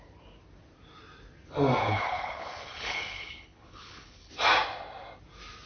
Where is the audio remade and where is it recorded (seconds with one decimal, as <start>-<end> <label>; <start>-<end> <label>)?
0.0-1.8 recorded; 1.8-4.3 remade; 4.3-5.7 recorded